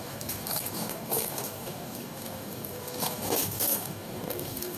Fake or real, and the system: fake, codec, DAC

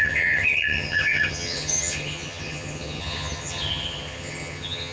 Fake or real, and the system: fake, vocoder, HiFi-GAN